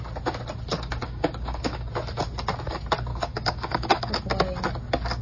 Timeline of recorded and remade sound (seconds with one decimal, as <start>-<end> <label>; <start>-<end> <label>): 0.0-0.7 recorded; 0.7-1.9 remade; 1.9-3.1 recorded; 3.1-4.1 remade; 4.1-5.2 recorded